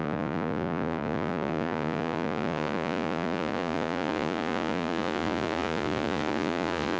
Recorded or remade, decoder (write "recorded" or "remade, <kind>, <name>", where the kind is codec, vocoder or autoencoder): remade, vocoder, Vocos